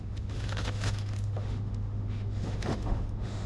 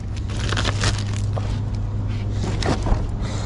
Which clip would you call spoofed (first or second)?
first